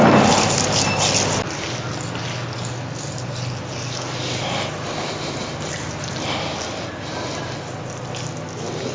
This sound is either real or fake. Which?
real